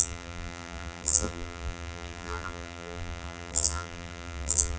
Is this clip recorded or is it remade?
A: remade